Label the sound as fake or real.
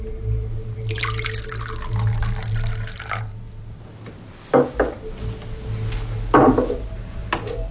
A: real